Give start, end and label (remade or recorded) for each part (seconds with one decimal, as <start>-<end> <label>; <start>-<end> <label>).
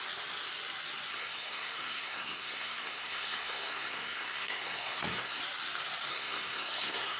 0.0-1.1 recorded; 1.1-5.4 remade; 5.4-6.1 recorded; 6.1-7.2 remade